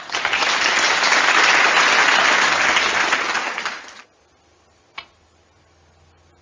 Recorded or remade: recorded